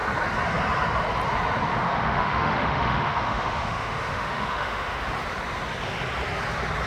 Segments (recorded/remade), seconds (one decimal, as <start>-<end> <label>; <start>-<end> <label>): 0.0-1.7 recorded; 1.7-5.0 remade; 5.0-6.9 recorded

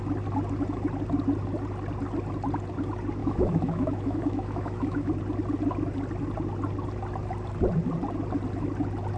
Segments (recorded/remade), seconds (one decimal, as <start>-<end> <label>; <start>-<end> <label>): 0.0-3.2 recorded; 3.2-5.1 remade; 5.1-9.2 recorded

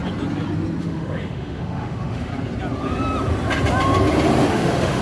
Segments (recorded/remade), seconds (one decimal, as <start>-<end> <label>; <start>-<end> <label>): 0.0-0.8 recorded; 0.8-2.3 remade; 2.3-4.5 recorded; 4.5-5.0 remade

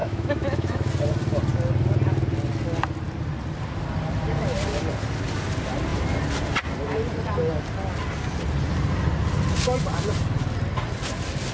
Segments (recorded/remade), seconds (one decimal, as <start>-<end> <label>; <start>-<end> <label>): 0.0-0.9 remade; 0.9-11.5 recorded

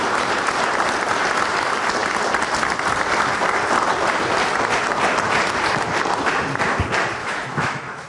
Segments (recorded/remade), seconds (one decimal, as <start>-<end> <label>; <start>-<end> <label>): 0.0-7.2 recorded; 7.2-8.1 remade

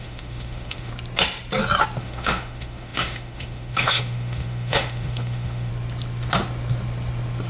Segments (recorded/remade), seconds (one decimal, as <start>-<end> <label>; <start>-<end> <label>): 0.0-0.9 remade; 0.9-2.0 recorded; 2.0-5.7 remade; 5.7-7.5 recorded

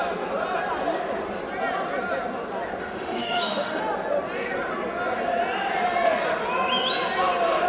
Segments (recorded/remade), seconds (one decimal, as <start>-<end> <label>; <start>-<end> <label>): 0.0-2.8 recorded; 2.8-3.8 remade; 3.8-7.7 recorded